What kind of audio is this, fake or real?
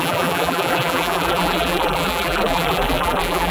fake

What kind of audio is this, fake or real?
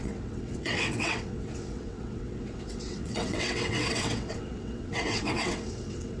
fake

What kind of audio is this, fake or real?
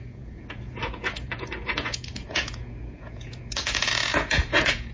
fake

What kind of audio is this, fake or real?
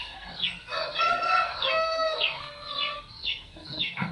fake